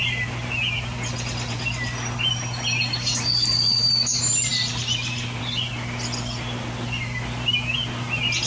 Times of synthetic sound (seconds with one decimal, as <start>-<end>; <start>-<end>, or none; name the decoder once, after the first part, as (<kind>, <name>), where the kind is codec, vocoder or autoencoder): none